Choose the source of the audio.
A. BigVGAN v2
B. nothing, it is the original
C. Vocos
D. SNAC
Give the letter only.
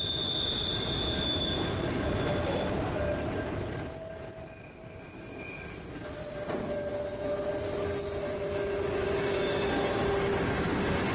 B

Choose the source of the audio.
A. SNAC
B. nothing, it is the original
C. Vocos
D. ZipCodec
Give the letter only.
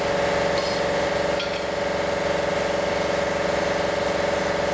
B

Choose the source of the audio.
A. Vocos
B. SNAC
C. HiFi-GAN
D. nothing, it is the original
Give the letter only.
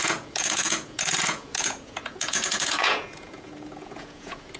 A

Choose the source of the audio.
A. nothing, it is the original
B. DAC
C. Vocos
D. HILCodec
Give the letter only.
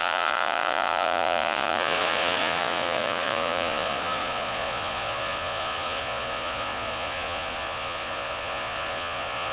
C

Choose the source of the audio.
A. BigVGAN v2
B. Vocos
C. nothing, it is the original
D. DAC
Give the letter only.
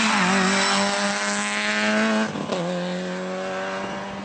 C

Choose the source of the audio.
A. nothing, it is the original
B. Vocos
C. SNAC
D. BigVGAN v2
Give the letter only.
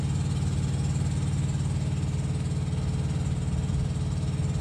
A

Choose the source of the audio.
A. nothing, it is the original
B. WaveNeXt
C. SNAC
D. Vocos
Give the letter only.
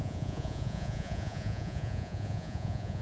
D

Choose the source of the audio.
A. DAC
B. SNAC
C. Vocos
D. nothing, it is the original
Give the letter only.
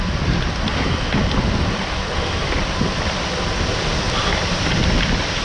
D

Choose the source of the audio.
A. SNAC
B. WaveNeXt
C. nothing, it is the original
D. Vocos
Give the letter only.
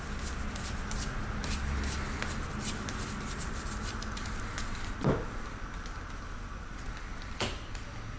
C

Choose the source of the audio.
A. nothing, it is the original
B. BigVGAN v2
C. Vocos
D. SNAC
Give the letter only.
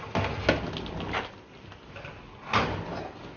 A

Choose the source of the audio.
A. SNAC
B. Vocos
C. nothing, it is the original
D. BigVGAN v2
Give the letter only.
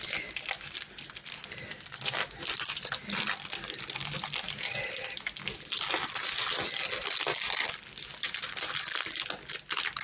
C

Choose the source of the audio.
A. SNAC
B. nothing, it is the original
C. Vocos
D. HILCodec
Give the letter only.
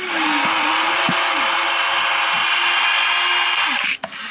B